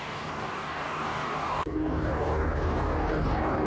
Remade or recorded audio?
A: remade